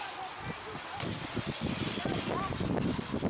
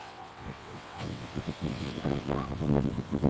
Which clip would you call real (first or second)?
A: first